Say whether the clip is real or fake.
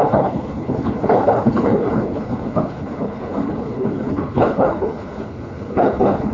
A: fake